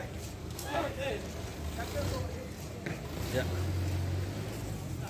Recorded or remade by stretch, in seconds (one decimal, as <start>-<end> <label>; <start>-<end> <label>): 0.0-0.4 recorded; 0.4-1.1 remade; 1.1-5.1 recorded